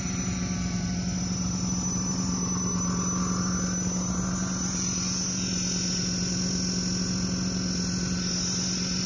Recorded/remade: recorded